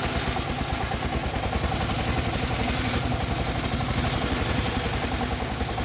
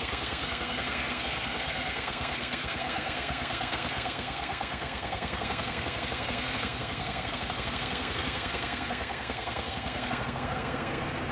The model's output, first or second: second